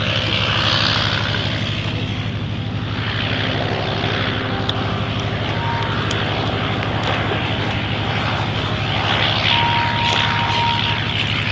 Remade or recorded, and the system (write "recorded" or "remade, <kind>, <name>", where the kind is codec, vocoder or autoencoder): recorded